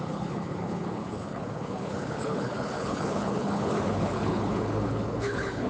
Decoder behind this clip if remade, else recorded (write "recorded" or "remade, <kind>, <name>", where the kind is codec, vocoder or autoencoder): remade, codec, HILCodec